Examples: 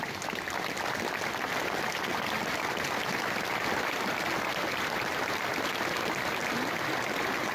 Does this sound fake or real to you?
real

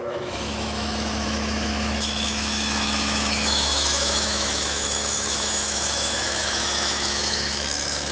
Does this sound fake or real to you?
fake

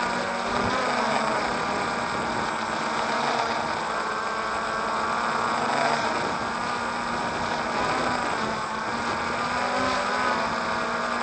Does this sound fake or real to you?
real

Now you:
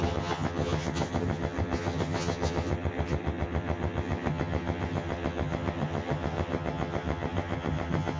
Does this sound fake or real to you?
fake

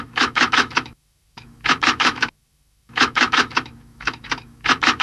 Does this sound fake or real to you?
fake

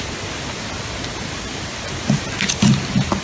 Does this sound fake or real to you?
fake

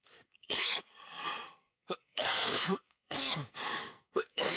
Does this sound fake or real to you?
fake